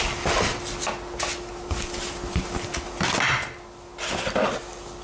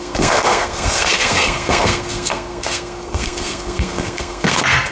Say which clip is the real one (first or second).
first